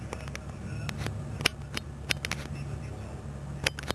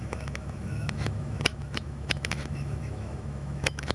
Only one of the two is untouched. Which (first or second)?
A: first